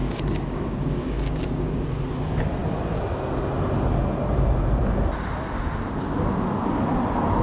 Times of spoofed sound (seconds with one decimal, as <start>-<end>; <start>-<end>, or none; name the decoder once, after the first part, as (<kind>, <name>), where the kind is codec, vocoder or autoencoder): 0.0-1.7 (codec, DAC)